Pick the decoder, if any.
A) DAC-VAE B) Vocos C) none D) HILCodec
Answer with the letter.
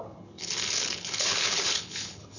D